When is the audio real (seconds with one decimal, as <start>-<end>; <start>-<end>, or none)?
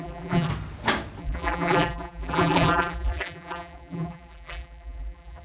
0.5-1.2